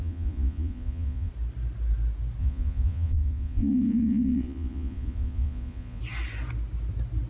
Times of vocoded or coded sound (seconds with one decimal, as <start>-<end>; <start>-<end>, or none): 0.0-1.3; 2.4-6.0